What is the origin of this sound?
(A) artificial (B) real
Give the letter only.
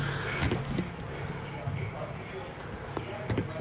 B